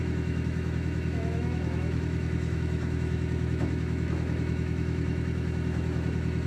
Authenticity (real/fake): fake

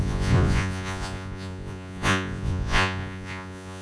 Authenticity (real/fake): fake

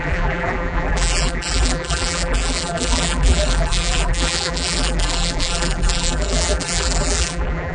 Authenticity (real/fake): fake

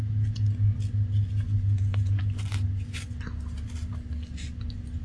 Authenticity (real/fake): real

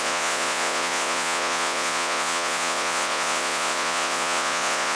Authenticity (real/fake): fake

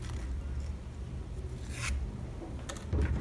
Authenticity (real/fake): real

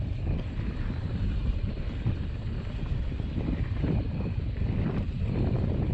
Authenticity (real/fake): real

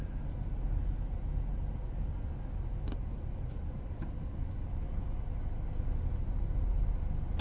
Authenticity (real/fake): real